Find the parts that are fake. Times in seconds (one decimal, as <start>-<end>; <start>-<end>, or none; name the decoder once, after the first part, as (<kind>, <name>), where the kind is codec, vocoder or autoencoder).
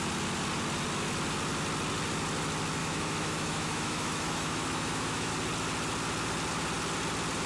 2.8-5.3 (autoencoder, DAC-VAE)